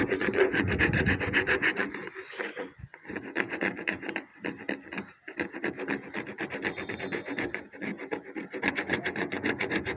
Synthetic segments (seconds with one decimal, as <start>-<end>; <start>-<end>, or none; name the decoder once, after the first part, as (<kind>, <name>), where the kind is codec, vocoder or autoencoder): 0.0-4.3 (vocoder, Vocos); 6.9-7.9; 8.7-10.0